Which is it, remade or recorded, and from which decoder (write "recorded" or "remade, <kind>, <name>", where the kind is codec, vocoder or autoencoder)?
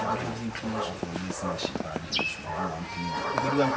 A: recorded